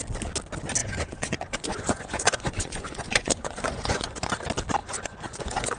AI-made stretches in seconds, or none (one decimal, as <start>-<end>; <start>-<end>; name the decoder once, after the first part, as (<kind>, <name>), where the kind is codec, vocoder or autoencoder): 0.8-4.3 (vocoder, Vocos); 4.8-5.8